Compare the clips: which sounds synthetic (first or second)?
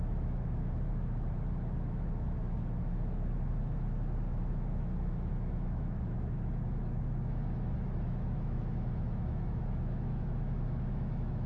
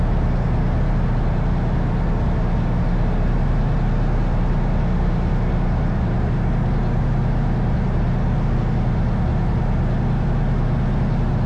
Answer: first